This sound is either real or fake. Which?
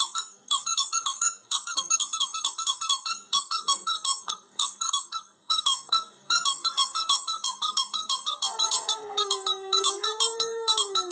fake